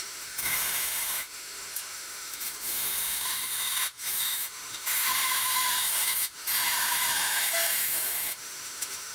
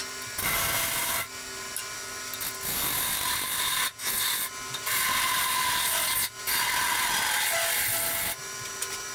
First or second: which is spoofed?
first